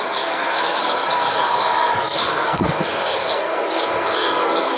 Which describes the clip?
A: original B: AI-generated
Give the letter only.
B